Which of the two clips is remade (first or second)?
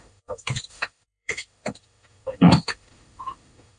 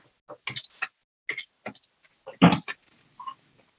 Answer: first